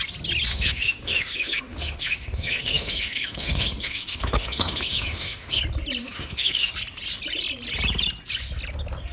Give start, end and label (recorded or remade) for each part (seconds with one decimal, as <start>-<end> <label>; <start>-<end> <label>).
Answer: 0.0-0.5 recorded; 0.5-5.6 remade; 5.6-6.0 recorded; 6.0-6.7 remade; 6.7-9.1 recorded